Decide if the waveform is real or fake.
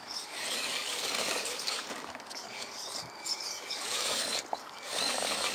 fake